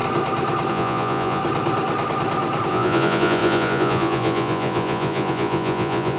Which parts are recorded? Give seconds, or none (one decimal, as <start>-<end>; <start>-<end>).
0.0-0.7; 1.4-2.7

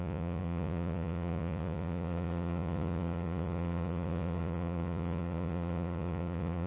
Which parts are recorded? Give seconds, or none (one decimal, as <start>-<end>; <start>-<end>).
none

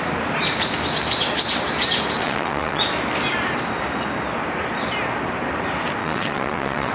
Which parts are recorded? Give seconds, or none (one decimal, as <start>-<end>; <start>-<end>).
0.0-2.2; 2.8-6.0

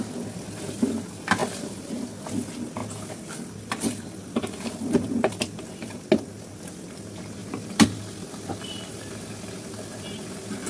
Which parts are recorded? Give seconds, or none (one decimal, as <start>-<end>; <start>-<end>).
0.0-1.4; 2.1-2.8; 6.0-7.4; 9.2-10.7